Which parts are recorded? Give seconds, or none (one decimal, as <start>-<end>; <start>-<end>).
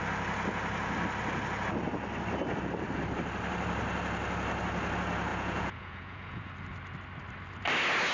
0.0-5.3; 6.5-8.1